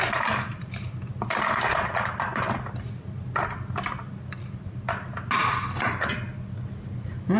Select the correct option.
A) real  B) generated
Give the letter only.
A